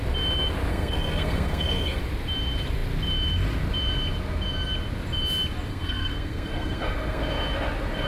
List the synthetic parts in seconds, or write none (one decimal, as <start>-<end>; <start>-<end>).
0.7-2.0; 5.7-7.2

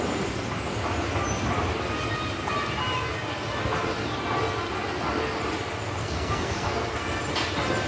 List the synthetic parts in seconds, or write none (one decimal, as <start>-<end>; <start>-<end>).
6.0-7.2